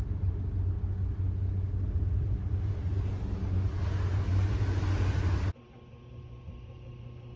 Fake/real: real